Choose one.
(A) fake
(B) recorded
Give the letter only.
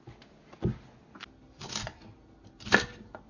B